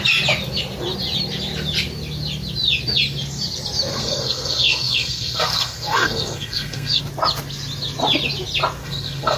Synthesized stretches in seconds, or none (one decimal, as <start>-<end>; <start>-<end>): 3.9-7.0; 8.8-9.4